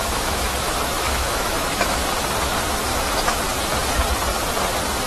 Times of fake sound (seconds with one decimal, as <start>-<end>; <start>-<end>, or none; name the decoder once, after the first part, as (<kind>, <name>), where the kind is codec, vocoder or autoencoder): 0.0-2.1 (autoencoder, DAC-VAE); 2.9-3.4